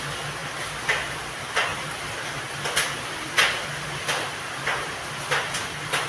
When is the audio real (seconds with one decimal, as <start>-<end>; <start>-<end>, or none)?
0.0-6.1